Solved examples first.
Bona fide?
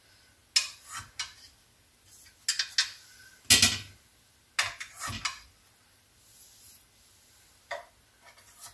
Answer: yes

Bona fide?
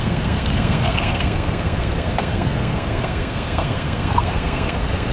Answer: no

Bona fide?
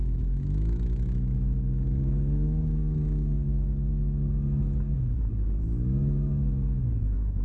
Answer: no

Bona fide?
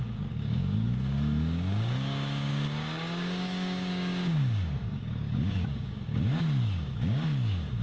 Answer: no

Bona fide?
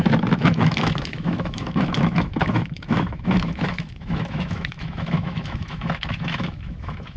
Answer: no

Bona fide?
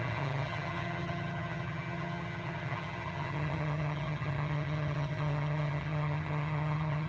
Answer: no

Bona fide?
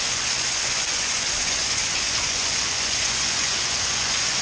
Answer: no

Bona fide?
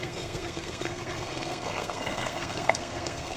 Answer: no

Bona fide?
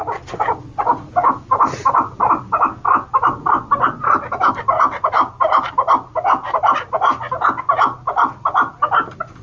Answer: yes